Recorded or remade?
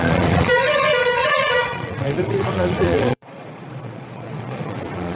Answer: remade